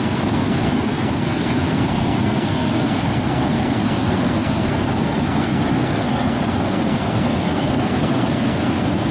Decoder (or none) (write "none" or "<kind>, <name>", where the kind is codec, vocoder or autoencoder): codec, SNAC